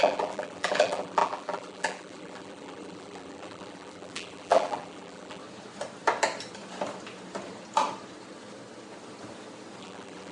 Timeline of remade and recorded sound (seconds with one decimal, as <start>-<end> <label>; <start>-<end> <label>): 0.0-5.4 remade; 5.4-9.8 recorded; 9.8-10.3 remade